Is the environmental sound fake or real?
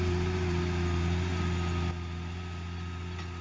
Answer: real